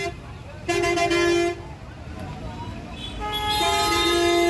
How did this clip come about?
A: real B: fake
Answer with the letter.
A